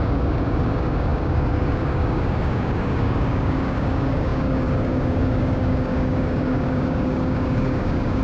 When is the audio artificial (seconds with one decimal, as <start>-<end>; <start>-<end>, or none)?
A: 0.0-8.2